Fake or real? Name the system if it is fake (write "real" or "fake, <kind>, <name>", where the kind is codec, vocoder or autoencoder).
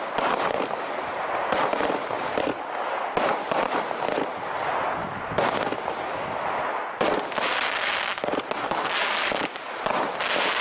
real